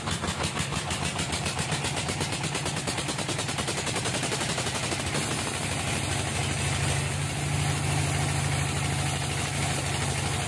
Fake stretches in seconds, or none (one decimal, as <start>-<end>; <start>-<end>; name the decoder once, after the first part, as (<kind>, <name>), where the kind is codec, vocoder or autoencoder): 0.7-5.0 (vocoder, BigVGAN v2)